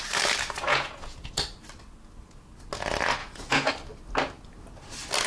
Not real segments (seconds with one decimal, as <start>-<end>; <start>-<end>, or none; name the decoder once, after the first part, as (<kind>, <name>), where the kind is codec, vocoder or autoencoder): 0.7-1.3 (vocoder, Vocos); 3.2-3.7